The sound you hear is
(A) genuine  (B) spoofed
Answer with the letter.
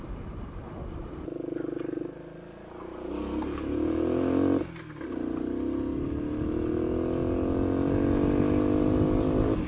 A